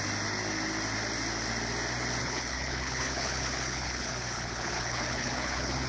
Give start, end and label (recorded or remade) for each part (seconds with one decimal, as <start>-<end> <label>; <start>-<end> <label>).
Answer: 0.0-2.2 recorded; 2.2-5.9 remade